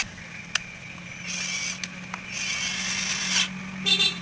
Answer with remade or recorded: recorded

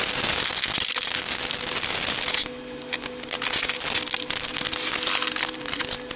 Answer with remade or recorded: recorded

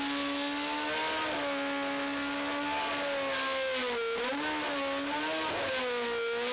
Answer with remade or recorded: recorded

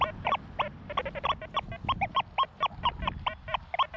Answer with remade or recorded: recorded